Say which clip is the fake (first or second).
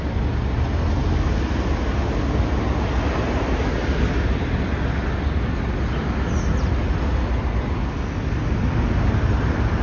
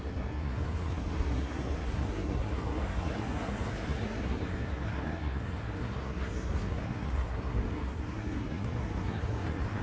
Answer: second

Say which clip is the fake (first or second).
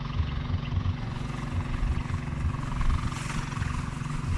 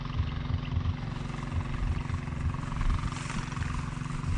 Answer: first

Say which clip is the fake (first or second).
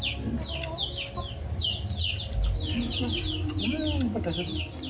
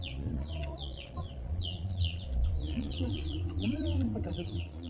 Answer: second